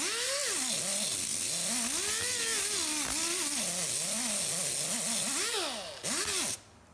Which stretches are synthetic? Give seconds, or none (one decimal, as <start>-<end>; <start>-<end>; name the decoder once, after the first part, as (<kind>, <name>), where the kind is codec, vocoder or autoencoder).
none

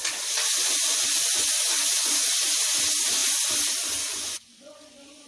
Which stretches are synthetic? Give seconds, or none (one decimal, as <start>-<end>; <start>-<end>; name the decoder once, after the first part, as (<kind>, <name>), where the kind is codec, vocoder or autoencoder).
0.0-3.2 (vocoder, Vocos); 3.9-5.3

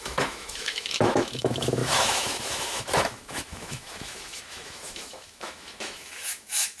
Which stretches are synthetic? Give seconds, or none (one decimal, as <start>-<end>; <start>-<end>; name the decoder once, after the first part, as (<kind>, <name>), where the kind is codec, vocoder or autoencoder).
0.0-6.8 (autoencoder, DAC-VAE)

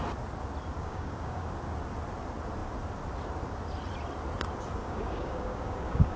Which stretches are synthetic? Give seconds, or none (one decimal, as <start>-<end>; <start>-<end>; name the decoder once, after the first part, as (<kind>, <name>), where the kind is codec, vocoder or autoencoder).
0.8-1.5 (codec, DAC); 4.8-6.2

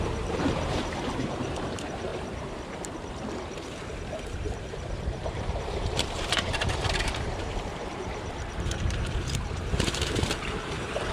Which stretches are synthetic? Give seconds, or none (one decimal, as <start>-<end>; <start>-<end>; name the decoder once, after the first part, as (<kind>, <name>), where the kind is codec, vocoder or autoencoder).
0.0-2.1 (vocoder, BigVGAN v2); 4.2-11.1